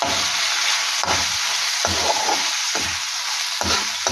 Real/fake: real